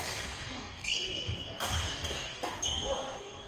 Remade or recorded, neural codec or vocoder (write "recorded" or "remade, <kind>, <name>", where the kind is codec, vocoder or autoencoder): remade, codec, DAC